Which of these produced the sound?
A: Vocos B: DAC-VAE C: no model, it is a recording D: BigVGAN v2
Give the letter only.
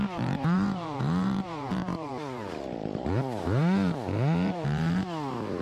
D